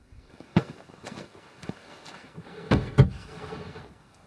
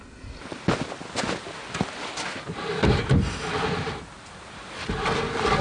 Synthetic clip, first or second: first